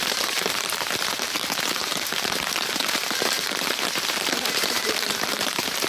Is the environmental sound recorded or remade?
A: remade